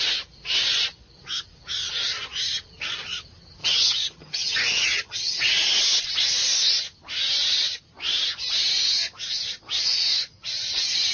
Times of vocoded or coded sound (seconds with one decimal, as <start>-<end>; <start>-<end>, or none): 3.6-5.4